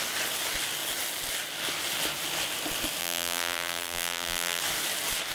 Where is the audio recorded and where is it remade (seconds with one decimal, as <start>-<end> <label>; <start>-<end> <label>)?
0.0-3.0 recorded; 3.0-4.6 remade; 4.6-5.3 recorded